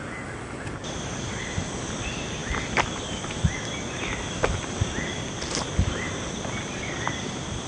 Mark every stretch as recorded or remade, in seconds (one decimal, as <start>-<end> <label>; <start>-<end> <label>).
0.0-7.7 recorded